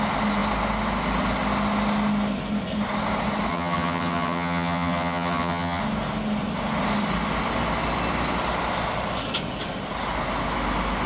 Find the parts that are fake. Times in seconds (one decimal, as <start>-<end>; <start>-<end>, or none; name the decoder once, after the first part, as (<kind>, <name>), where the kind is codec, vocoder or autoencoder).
3.5-5.8 (vocoder, HiFi-GAN)